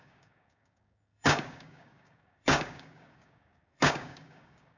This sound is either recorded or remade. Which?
remade